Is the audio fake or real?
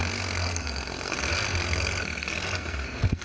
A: fake